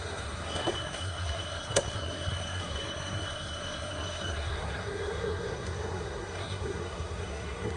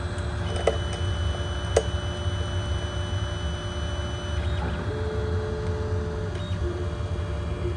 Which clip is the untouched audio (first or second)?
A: second